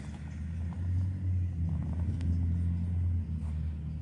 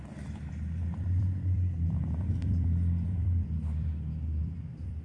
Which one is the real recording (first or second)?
first